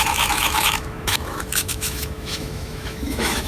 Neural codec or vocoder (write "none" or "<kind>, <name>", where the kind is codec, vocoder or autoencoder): autoencoder, DAC-VAE